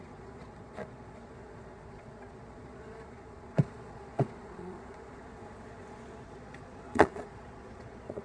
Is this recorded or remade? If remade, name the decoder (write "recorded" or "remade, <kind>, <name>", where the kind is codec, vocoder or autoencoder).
remade, vocoder, Vocos